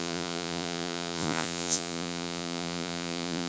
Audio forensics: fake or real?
fake